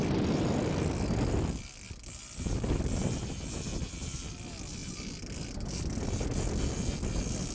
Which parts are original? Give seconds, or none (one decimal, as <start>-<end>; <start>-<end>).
0.0-7.5